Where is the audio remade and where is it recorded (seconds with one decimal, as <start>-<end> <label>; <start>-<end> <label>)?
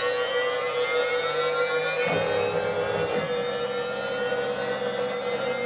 0.0-5.7 recorded